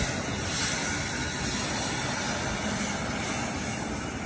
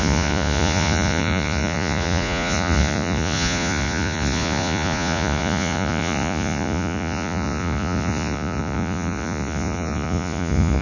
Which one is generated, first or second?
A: second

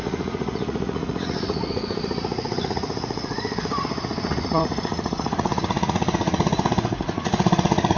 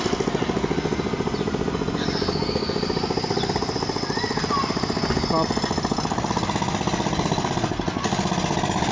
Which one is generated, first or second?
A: first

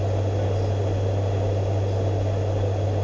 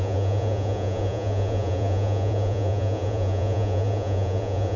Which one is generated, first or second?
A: second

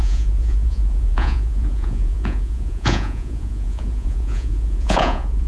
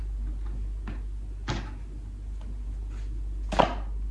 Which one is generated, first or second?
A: first